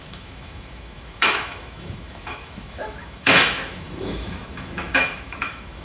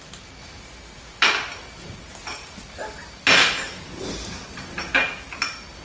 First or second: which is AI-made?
first